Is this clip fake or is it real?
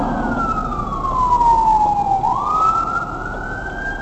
real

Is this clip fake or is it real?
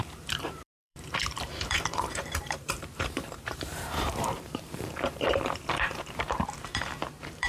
fake